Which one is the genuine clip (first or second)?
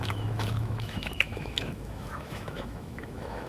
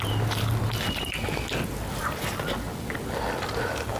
second